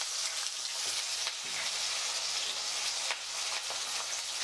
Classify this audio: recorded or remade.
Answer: recorded